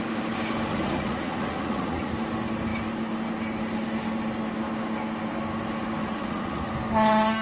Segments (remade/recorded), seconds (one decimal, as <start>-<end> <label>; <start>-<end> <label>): 0.0-0.7 recorded; 0.7-2.1 remade; 2.1-6.0 recorded; 6.0-6.7 remade; 6.7-7.4 recorded